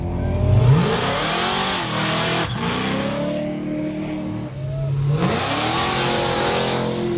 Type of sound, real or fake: real